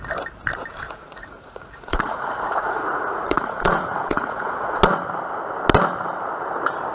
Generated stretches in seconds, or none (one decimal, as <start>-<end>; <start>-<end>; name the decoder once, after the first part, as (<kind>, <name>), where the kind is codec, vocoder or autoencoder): 0.7-4.8 (vocoder, Vocos)